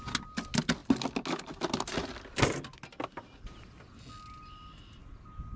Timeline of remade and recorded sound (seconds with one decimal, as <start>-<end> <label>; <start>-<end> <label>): 0.0-5.6 recorded